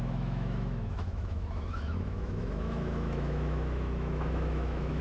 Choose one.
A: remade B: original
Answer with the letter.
A